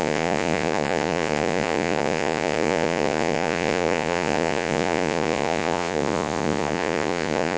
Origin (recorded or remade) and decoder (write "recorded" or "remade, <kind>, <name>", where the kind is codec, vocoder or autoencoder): remade, vocoder, Vocos